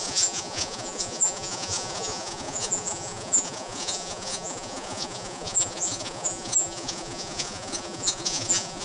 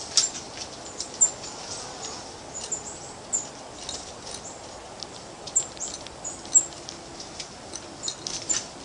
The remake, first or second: first